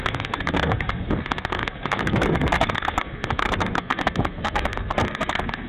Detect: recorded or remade remade